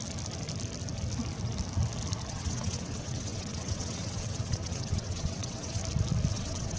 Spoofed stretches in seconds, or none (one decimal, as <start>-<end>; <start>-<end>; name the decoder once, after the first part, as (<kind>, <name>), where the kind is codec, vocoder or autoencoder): 2.3-5.8 (vocoder, WaveNeXt); 6.3-6.8